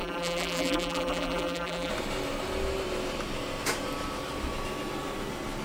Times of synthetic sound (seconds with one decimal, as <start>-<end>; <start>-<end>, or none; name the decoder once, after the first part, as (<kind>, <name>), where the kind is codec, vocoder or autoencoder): 0.0-1.9 (vocoder, BigVGAN v2)